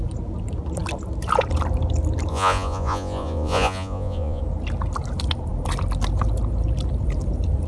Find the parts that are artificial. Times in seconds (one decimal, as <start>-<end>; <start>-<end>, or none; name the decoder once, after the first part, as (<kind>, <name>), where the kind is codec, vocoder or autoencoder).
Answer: 2.3-4.4 (vocoder, Vocos)